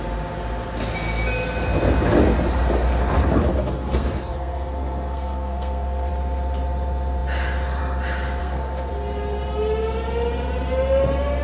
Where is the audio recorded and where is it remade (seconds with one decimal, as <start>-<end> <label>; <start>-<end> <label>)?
0.0-3.5 recorded; 3.5-6.1 remade; 6.1-8.4 recorded; 8.4-8.9 remade; 8.9-11.4 recorded